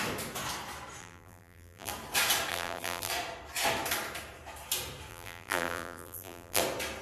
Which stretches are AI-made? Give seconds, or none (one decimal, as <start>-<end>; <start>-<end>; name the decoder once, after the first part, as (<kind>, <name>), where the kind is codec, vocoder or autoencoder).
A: 1.0-1.9 (vocoder, BigVGAN v2); 2.5-3.1; 5.1-6.6